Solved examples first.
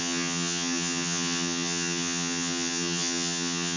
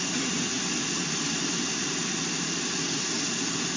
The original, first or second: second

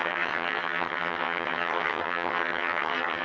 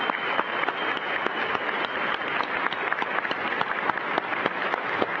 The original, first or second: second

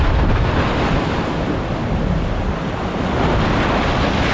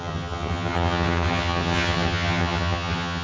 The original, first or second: first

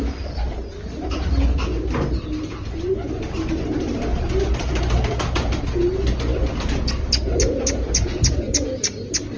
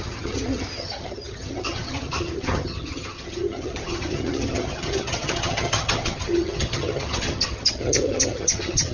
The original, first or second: first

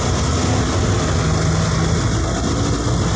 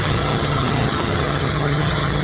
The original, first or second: first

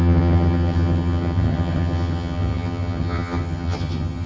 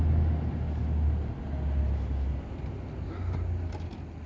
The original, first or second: second